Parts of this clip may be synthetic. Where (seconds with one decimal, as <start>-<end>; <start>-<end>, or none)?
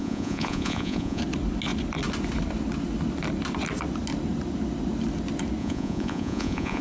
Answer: 0.0-1.2; 5.6-6.8